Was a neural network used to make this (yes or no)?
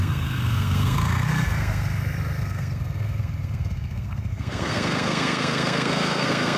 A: yes